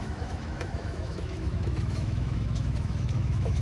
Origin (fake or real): fake